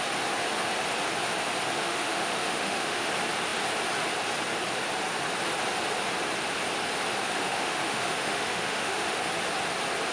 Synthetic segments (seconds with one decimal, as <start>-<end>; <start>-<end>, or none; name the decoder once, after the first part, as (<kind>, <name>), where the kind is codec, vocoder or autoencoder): 1.8-3.1 (autoencoder, DAC-VAE); 7.4-9.3

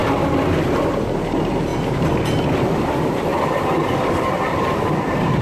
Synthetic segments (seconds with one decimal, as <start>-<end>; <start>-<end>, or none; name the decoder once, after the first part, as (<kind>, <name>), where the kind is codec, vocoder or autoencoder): 0.7-1.7 (vocoder, BigVGAN v2); 4.9-5.4

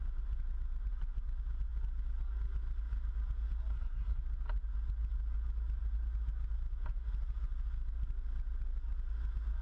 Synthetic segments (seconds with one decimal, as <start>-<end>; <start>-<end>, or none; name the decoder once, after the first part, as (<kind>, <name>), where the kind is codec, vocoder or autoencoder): 3.7-4.2 (codec, SNAC)

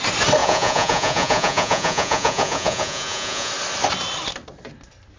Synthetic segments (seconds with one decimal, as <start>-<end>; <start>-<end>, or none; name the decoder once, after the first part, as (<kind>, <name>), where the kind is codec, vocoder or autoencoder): 0.4-3.5 (vocoder, Vocos)

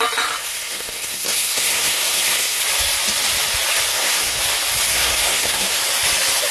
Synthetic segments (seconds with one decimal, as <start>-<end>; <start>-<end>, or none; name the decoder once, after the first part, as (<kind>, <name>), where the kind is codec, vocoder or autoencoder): 0.4-2.6 (codec, SNAC); 3.9-4.4; 4.9-5.8

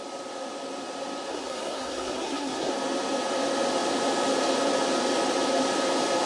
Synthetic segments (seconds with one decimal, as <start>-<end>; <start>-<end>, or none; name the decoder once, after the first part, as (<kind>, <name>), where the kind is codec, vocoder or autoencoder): 1.3-2.7 (codec, SNAC)